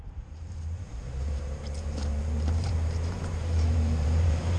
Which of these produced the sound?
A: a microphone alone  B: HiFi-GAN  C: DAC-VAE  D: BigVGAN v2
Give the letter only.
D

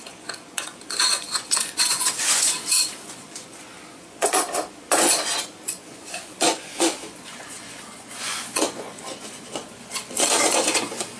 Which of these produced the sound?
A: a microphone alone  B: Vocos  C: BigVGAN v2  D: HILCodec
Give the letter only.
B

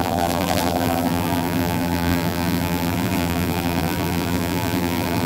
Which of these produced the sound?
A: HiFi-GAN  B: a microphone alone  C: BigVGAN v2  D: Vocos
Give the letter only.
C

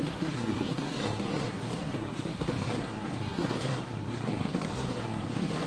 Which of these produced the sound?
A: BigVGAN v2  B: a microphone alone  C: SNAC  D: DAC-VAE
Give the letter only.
C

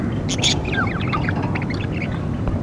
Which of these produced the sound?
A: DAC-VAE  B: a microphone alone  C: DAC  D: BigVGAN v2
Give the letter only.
D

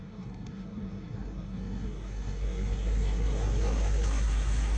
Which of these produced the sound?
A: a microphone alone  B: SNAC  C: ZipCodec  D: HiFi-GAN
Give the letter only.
B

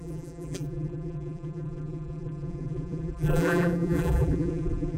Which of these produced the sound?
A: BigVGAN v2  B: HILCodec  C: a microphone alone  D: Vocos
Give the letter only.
A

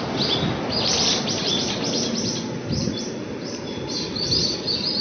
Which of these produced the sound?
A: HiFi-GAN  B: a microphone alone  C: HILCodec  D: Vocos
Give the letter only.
B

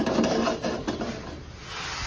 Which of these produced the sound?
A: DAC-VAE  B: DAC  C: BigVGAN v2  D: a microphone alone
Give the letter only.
D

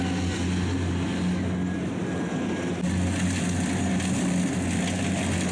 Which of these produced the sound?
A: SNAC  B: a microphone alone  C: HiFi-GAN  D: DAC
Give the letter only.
B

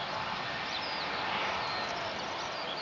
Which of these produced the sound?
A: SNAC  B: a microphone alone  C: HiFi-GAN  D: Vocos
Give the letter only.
B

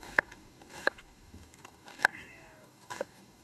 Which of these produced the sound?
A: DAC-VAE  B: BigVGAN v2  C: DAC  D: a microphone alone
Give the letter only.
C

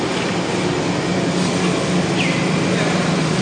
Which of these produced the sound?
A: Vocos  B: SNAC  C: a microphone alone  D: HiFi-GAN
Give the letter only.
C